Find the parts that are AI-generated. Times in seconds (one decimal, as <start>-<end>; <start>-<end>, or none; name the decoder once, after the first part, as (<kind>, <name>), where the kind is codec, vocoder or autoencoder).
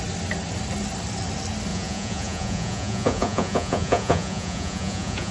1.7-5.3 (vocoder, Vocos)